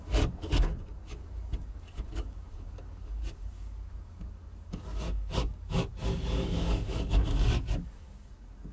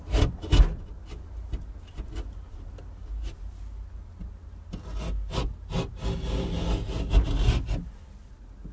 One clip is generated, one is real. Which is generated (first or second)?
first